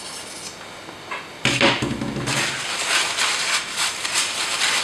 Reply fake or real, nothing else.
fake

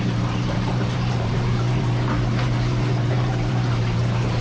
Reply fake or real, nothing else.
fake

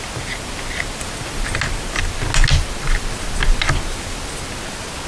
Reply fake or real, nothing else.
real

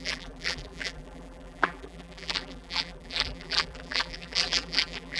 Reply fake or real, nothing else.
fake